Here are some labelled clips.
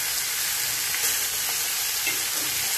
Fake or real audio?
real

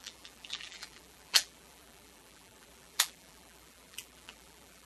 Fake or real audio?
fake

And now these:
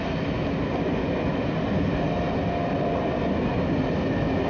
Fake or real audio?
real